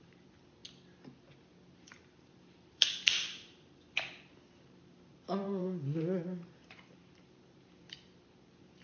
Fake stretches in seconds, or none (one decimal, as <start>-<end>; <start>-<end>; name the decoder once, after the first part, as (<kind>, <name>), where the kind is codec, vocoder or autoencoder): 0.0-0.6 (vocoder, BigVGAN v2); 1.7-8.8